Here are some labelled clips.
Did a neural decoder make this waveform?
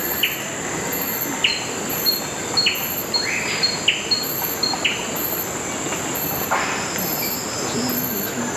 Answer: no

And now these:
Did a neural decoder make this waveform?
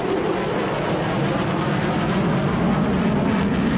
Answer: no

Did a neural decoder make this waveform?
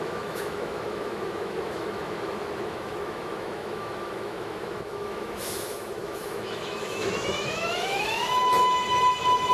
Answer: yes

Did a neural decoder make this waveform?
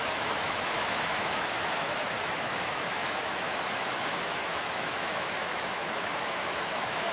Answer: yes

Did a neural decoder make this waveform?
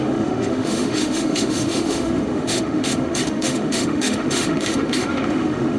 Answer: yes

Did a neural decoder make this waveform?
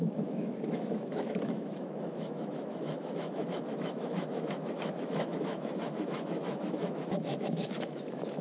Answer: yes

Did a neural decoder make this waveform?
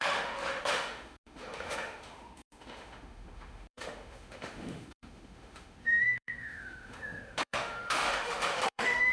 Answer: yes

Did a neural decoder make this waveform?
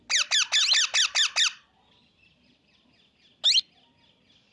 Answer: no